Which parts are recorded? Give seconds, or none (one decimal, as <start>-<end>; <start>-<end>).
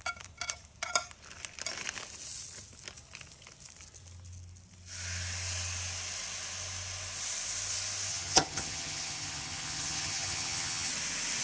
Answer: 0.0-8.1; 10.9-11.4